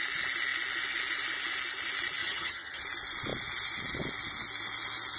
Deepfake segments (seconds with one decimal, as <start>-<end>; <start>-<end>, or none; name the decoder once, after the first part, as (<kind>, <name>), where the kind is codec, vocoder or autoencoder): 2.2-2.8 (vocoder, HiFi-GAN)